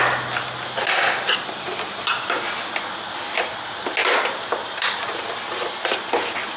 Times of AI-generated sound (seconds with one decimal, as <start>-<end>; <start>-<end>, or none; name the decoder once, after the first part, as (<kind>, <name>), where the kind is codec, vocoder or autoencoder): 4.0-6.1 (vocoder, BigVGAN v2)